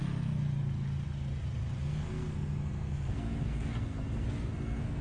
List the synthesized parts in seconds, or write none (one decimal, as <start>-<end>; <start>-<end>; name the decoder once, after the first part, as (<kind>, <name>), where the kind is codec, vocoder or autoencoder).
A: 1.8-5.0 (codec, SNAC)